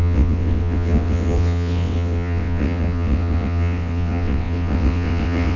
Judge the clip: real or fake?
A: fake